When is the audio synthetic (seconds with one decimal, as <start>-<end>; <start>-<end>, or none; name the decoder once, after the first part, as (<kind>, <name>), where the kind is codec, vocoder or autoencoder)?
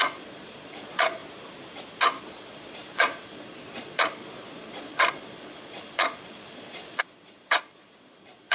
0.0-1.2 (vocoder, Vocos); 2.2-8.5